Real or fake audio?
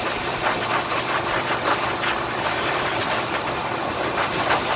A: fake